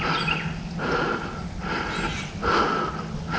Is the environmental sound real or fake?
real